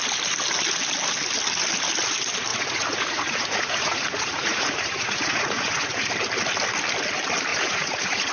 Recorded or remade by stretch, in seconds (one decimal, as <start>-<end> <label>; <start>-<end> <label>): 0.0-2.5 recorded; 2.5-6.1 remade; 6.1-7.5 recorded; 7.5-8.3 remade